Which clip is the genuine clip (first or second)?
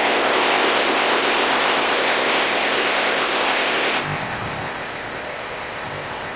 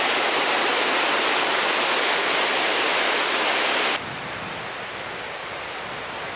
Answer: second